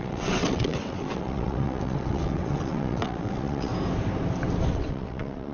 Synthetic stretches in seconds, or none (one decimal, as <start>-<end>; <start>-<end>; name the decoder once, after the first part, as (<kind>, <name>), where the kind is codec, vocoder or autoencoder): 0.0-3.7 (vocoder, WaveNeXt); 4.7-5.5